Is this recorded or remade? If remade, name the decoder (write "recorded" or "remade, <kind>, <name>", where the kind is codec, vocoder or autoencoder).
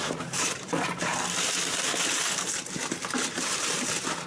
remade, vocoder, BigVGAN v2